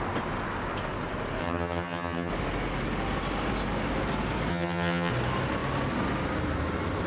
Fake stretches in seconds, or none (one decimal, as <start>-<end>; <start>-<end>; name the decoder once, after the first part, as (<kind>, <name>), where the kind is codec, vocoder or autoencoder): 1.4-2.3 (vocoder, HiFi-GAN); 4.5-5.1